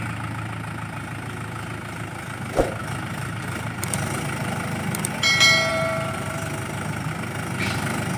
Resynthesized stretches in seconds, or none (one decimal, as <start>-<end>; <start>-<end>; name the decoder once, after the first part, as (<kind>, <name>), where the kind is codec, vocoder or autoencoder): 2.8-4.2 (vocoder, BigVGAN v2); 5.7-7.1